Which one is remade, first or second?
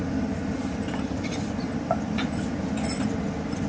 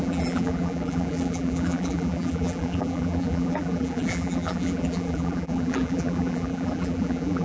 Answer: second